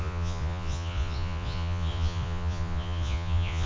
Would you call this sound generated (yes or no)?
yes